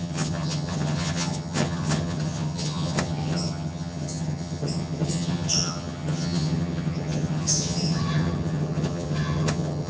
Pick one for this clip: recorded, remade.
remade